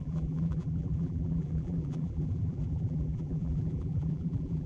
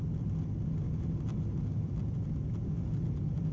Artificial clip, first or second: first